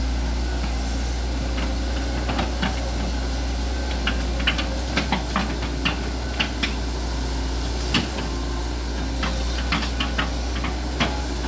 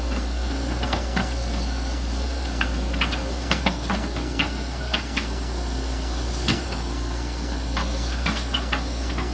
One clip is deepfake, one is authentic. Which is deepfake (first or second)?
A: second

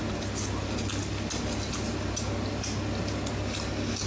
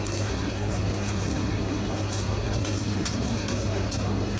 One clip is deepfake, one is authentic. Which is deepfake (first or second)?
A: second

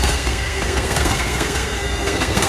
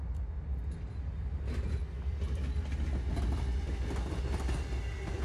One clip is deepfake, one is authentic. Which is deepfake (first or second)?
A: first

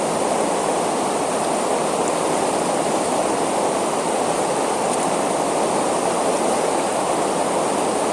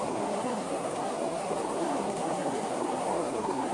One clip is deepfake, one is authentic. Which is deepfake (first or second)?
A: second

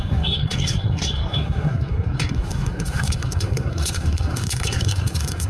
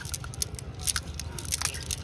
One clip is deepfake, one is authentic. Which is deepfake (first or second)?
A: first